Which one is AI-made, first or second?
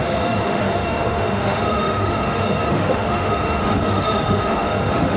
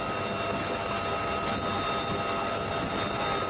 first